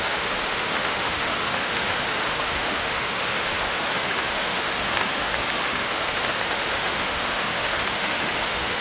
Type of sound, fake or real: fake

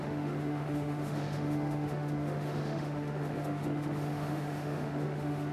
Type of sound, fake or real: fake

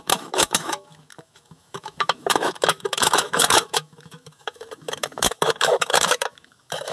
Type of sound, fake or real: fake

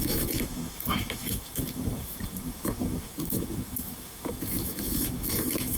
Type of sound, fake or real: fake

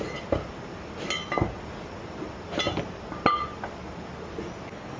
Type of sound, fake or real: real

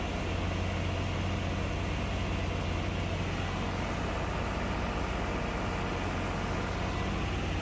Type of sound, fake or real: real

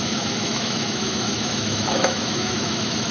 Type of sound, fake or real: fake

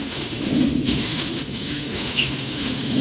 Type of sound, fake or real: fake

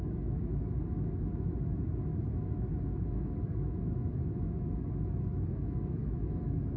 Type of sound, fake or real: fake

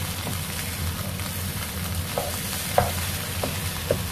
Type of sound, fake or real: real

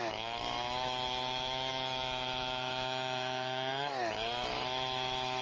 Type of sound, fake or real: fake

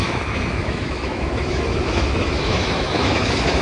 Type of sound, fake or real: fake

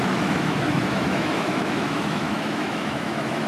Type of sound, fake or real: fake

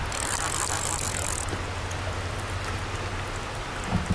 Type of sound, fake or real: real